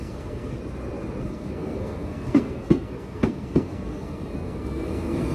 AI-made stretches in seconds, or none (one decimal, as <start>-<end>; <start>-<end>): 0.0-0.6; 1.2-5.3